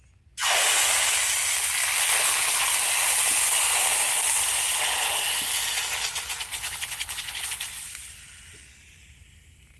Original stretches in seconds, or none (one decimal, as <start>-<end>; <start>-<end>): 0.0-2.2; 2.7-6.5; 7.6-9.8

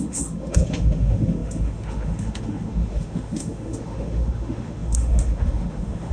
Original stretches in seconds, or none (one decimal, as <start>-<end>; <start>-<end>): none